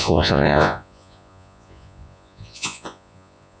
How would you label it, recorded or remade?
remade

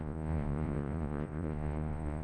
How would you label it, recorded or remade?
remade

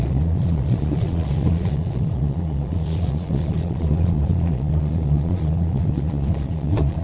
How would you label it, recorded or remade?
remade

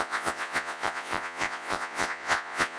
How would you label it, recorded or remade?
remade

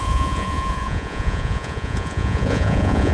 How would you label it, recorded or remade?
remade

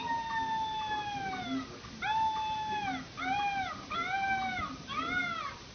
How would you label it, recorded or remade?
recorded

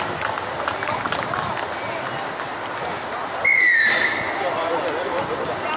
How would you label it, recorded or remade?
recorded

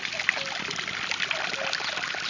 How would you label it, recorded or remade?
recorded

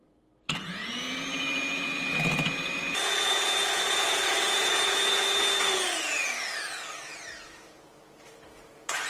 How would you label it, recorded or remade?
remade